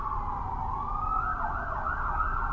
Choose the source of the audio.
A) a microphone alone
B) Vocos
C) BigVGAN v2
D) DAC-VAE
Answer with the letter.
A